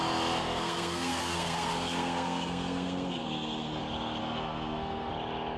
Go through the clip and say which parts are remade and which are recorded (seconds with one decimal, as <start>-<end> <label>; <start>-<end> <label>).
0.0-0.4 recorded; 0.4-3.8 remade; 3.8-4.2 recorded; 4.2-5.1 remade; 5.1-5.6 recorded